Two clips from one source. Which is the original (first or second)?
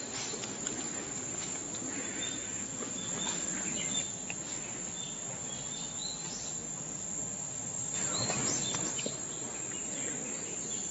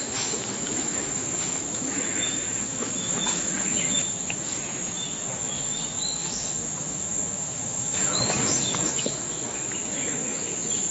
first